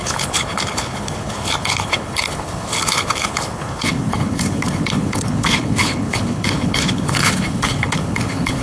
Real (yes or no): no